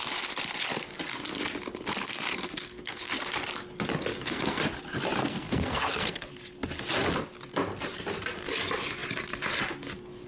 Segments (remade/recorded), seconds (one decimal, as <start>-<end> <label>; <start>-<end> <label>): 0.0-2.1 recorded; 2.1-3.2 remade; 3.2-4.1 recorded; 4.1-4.6 remade; 4.6-5.2 recorded; 5.2-6.3 remade; 6.3-10.3 recorded